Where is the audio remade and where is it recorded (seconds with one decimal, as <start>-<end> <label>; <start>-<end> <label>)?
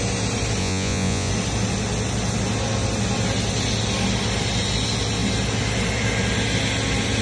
0.0-0.6 recorded; 0.6-1.3 remade; 1.3-7.2 recorded